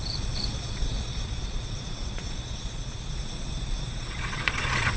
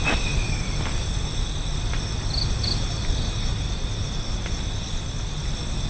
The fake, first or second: first